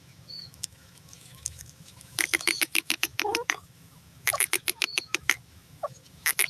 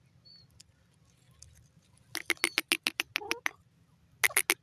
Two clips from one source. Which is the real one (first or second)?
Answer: second